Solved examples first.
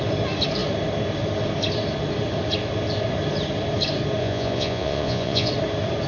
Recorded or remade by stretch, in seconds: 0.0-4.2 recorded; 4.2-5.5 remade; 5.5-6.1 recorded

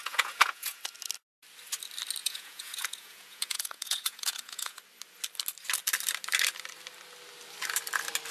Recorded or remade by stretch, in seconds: 0.0-0.8 remade; 0.8-2.2 recorded; 2.2-4.8 remade; 4.8-8.3 recorded